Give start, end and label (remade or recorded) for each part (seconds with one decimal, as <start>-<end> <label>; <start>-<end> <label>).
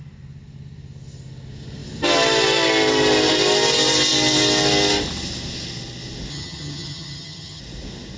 0.0-6.3 recorded; 6.3-7.6 remade; 7.6-8.2 recorded